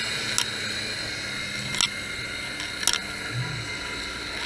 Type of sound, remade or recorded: recorded